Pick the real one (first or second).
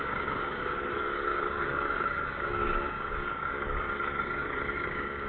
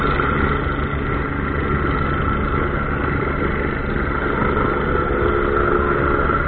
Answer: second